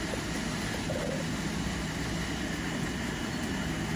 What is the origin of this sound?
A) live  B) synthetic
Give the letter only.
A